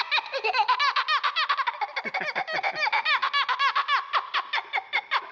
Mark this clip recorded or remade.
recorded